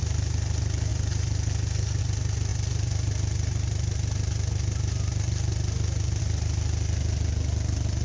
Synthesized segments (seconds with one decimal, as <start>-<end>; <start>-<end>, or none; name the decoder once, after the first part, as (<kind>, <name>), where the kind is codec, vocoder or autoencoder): none